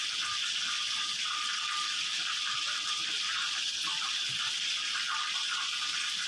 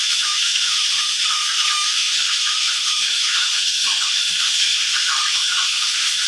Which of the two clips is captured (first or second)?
first